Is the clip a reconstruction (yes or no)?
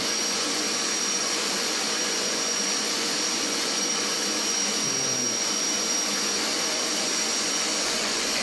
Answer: yes